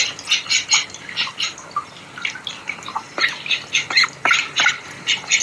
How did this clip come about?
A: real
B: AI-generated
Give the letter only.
A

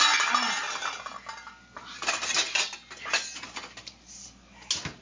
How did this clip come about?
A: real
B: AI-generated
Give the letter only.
A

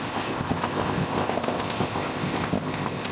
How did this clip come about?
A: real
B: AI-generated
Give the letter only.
B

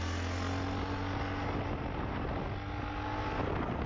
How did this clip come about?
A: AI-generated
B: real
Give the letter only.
B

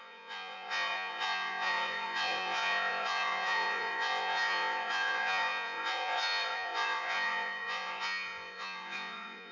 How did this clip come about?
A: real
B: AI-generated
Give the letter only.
B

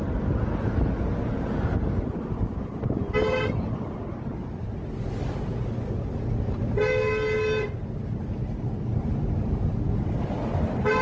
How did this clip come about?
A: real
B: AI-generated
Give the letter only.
A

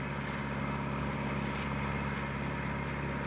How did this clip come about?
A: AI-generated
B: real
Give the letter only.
B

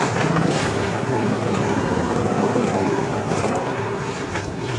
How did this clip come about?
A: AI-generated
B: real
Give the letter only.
A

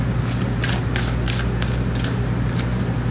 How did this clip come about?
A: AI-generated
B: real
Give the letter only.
B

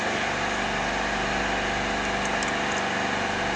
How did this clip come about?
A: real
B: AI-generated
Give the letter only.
A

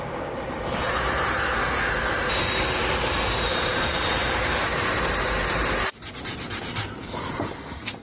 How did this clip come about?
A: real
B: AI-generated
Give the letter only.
B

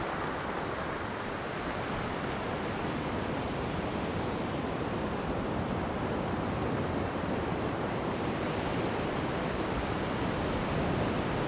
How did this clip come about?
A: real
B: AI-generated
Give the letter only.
B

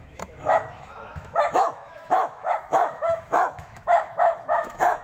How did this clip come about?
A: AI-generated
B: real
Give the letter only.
A